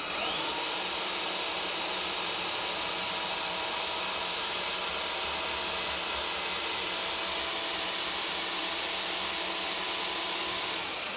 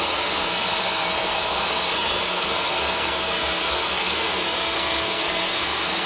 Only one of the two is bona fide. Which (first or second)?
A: first